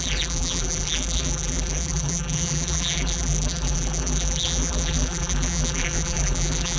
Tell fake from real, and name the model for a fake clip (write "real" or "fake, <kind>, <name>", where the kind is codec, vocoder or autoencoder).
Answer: fake, vocoder, BigVGAN v2